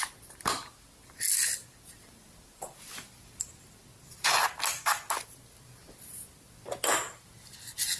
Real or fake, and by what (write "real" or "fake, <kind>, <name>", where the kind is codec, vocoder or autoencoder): real